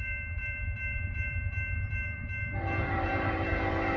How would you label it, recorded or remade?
remade